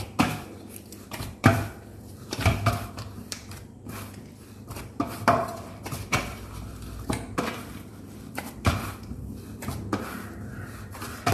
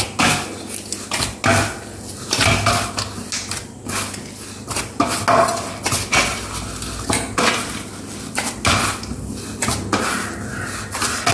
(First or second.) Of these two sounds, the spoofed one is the first